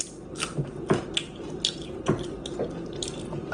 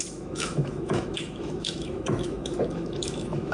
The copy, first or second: second